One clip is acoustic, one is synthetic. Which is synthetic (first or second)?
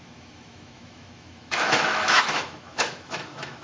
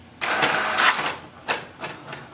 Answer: first